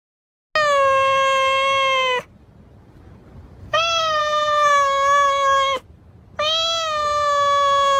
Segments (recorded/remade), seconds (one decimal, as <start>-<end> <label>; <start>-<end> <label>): 0.0-3.6 recorded; 3.6-4.2 remade; 4.2-8.0 recorded